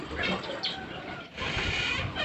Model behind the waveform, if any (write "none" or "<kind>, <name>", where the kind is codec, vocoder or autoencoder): none